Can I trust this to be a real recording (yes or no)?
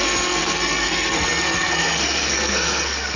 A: no